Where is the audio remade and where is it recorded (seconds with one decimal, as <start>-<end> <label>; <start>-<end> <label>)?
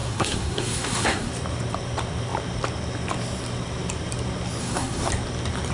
0.0-1.3 remade; 1.3-4.6 recorded; 4.6-5.1 remade; 5.1-5.7 recorded